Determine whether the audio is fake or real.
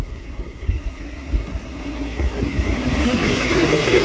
fake